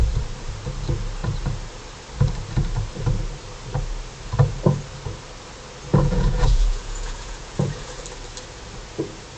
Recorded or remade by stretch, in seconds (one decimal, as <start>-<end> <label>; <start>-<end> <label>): 0.0-5.9 recorded; 5.9-8.0 remade; 8.0-9.4 recorded